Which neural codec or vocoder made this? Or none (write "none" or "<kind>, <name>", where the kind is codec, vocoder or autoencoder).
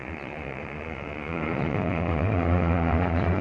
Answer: vocoder, Vocos